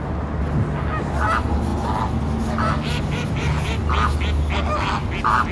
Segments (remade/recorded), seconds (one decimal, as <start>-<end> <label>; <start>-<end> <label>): 0.0-5.5 recorded

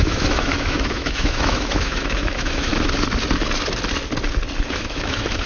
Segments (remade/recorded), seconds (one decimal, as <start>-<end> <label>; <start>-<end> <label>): 0.0-2.7 remade; 2.7-4.7 recorded; 4.7-5.5 remade